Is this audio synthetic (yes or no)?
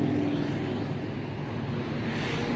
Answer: no